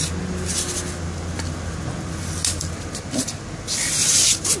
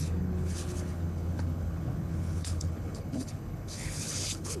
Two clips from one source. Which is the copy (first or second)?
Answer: second